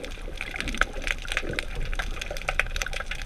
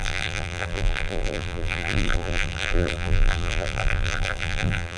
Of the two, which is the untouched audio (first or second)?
first